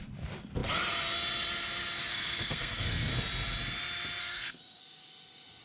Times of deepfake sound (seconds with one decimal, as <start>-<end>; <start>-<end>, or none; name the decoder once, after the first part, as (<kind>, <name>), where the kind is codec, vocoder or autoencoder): 2.0-3.1 (codec, SNAC); 4.2-4.8